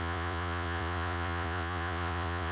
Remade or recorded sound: remade